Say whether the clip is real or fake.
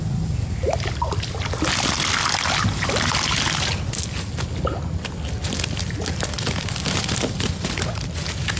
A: real